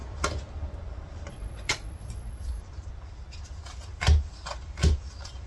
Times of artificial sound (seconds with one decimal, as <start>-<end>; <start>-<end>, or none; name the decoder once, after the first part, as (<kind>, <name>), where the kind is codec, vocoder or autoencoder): 1.3-2.6 (vocoder, Vocos)